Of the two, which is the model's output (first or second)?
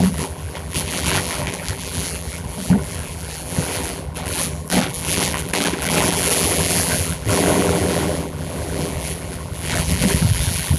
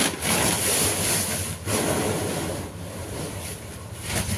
first